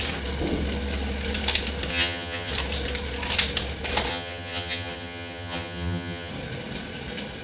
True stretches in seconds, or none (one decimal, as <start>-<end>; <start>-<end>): 0.0-1.9; 2.5-4.1; 6.3-7.4